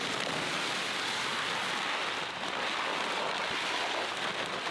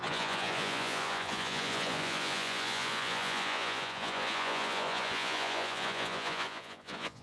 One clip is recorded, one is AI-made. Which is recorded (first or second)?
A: first